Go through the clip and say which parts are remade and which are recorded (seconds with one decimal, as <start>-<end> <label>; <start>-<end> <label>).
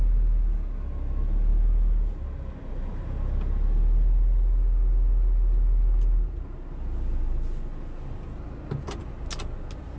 0.0-10.0 recorded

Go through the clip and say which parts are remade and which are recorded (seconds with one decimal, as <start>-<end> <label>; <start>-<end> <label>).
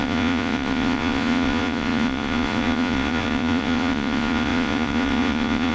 0.0-5.7 remade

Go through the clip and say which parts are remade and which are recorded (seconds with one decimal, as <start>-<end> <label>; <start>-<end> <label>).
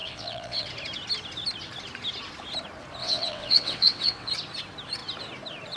0.0-0.7 remade; 0.7-3.0 recorded; 3.0-4.3 remade; 4.3-5.8 recorded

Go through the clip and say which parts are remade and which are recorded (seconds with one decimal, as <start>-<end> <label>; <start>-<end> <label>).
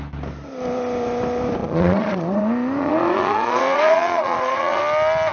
0.0-1.6 recorded; 1.6-2.4 remade; 2.4-2.8 recorded; 2.8-4.8 remade; 4.8-5.3 recorded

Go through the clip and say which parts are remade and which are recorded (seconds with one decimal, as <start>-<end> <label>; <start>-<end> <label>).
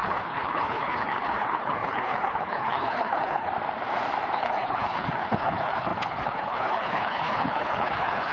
0.0-3.5 remade; 3.5-4.4 recorded; 4.4-8.3 remade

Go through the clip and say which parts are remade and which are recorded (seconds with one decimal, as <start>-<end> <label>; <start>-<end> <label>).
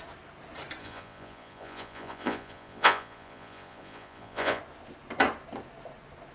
0.0-0.8 recorded; 0.8-4.6 remade; 4.6-6.3 recorded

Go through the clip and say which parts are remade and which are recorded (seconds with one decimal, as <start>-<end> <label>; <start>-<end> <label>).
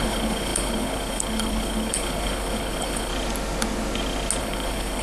0.0-3.1 remade; 3.1-4.4 recorded; 4.4-5.0 remade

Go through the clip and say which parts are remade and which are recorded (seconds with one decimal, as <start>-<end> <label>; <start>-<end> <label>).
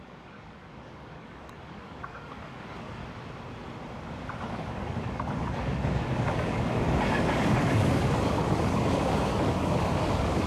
0.0-3.0 remade; 3.0-4.5 recorded; 4.5-10.5 remade